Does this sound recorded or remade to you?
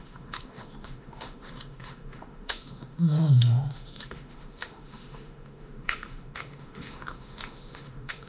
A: remade